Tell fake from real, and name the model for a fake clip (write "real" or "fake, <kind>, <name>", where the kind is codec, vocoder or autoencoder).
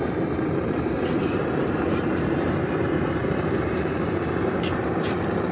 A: fake, vocoder, BigVGAN v2